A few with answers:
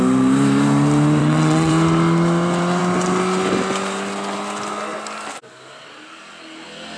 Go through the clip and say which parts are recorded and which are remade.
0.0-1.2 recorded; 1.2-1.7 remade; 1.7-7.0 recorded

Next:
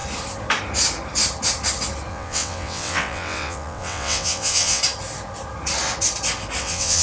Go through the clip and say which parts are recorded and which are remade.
0.0-2.1 recorded; 2.1-4.8 remade; 4.8-6.6 recorded; 6.6-7.0 remade

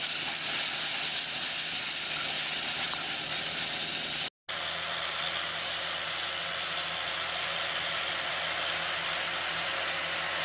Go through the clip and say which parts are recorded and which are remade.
0.0-10.4 recorded